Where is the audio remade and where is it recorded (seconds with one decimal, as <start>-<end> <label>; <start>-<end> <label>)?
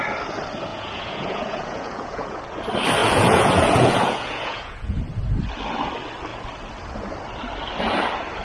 0.0-0.7 recorded; 0.7-2.4 remade; 2.4-3.0 recorded; 3.0-5.0 remade; 5.0-8.4 recorded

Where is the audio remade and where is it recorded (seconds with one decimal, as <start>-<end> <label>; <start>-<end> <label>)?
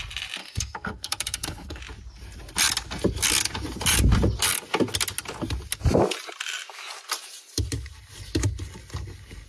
0.0-0.4 recorded; 0.4-1.8 remade; 1.8-9.5 recorded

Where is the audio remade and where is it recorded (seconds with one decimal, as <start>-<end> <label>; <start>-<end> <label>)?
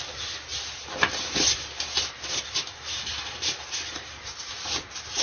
0.0-5.2 recorded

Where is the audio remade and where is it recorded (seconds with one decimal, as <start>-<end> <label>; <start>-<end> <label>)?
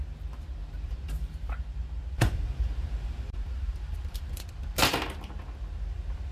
0.0-0.6 recorded; 0.6-4.4 remade; 4.4-6.3 recorded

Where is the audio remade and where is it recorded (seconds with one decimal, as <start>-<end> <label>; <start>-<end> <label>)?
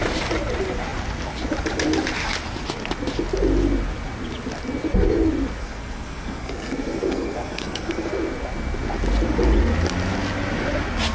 0.0-5.6 recorded; 5.6-8.1 remade; 8.1-11.1 recorded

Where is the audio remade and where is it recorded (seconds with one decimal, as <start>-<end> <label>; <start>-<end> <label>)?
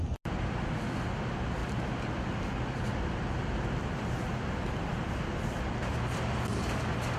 0.0-7.2 recorded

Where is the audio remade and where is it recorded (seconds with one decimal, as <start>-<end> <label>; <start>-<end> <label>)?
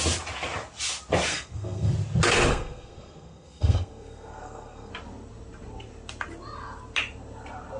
0.0-1.3 recorded; 1.3-1.9 remade; 1.9-2.5 recorded; 2.5-4.9 remade; 4.9-7.8 recorded